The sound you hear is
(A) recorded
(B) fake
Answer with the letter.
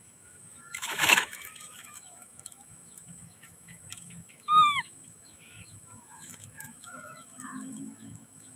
B